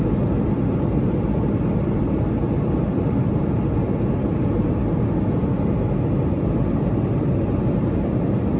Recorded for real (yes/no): yes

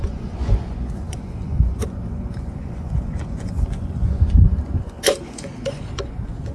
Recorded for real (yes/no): no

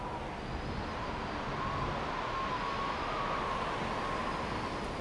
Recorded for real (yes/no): yes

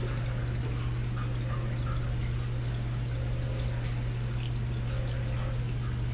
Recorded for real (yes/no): yes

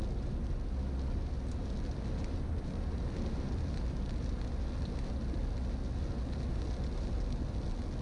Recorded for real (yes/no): yes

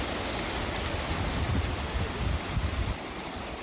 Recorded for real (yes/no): yes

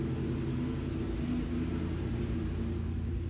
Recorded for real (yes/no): yes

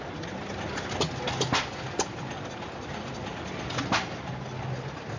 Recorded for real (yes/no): yes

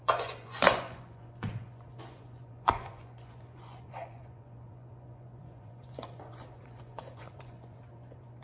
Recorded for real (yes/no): no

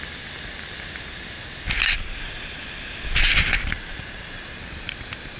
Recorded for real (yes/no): yes